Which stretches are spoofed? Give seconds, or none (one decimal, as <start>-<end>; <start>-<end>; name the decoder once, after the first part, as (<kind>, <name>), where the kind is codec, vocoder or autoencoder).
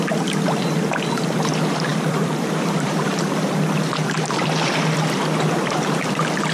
1.9-3.0 (vocoder, BigVGAN v2); 4.0-4.7